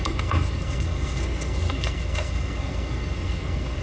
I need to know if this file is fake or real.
fake